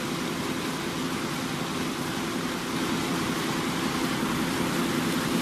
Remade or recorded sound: recorded